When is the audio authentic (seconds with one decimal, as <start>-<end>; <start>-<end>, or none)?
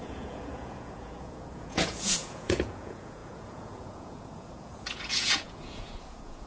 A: none